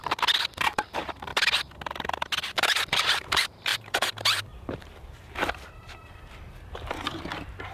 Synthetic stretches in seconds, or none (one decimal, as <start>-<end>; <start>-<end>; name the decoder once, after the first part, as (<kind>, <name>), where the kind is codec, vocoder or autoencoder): 0.6-1.3 (vocoder, BigVGAN v2); 2.5-7.7